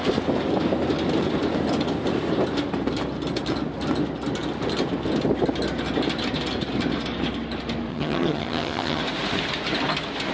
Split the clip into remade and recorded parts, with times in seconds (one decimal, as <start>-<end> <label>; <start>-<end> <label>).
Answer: 0.0-7.9 recorded; 7.9-9.0 remade; 9.0-10.3 recorded